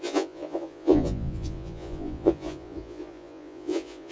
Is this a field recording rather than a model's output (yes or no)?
no